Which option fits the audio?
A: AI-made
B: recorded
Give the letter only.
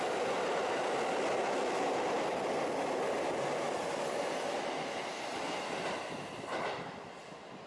B